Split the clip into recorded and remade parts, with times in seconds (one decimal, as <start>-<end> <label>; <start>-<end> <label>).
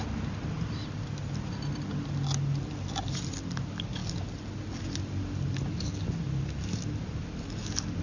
0.0-8.0 recorded